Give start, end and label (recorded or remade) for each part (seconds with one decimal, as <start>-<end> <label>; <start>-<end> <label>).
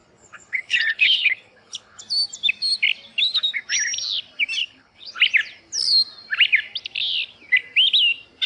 0.0-2.0 remade; 2.0-4.6 recorded; 4.6-5.2 remade; 5.2-8.5 recorded